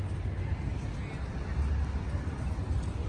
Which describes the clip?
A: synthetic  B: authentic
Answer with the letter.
B